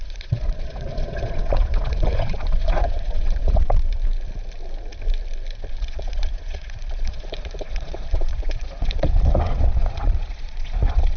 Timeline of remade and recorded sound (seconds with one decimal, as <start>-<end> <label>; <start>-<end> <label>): 0.0-3.8 remade; 3.8-5.7 recorded; 5.7-11.2 remade